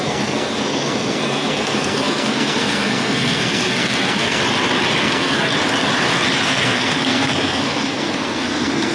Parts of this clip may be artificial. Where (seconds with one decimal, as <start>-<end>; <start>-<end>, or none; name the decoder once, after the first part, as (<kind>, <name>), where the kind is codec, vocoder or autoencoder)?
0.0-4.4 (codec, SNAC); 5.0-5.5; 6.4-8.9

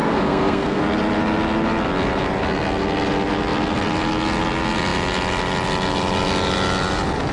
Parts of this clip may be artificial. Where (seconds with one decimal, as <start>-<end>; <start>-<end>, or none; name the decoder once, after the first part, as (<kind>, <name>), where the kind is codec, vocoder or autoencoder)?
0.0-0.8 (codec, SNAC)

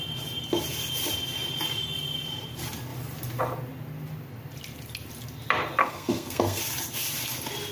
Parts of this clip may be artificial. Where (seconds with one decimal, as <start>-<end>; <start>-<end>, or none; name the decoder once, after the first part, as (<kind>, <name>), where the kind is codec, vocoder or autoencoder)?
5.8-6.6 (codec, SNAC)

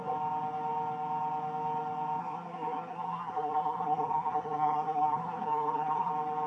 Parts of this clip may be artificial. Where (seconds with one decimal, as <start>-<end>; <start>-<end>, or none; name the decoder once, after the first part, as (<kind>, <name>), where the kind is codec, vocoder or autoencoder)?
2.2-6.1 (codec, SNAC)

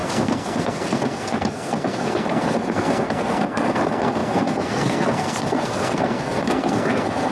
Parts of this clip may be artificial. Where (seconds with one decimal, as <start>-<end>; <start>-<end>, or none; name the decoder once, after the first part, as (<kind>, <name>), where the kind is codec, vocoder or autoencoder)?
0.0-7.3 (codec, SNAC)